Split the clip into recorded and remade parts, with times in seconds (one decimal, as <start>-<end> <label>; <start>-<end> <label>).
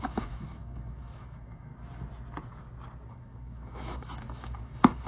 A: 0.0-1.7 remade; 1.7-3.1 recorded; 3.1-5.1 remade